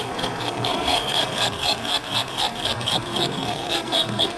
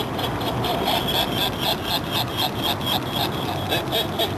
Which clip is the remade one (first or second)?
first